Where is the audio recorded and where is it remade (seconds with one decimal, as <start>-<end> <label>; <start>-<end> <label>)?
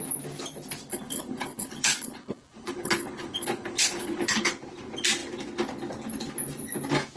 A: 0.0-0.9 recorded; 0.9-4.5 remade; 4.5-7.2 recorded